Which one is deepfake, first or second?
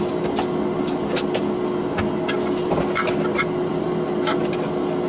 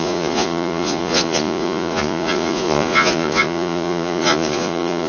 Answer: second